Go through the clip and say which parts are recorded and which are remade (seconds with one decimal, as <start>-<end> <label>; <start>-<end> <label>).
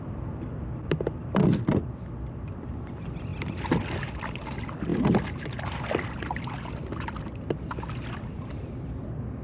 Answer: 0.0-9.4 recorded